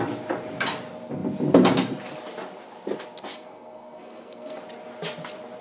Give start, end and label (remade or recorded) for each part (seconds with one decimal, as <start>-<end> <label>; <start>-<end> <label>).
0.0-3.3 recorded; 3.3-4.6 remade; 4.6-5.6 recorded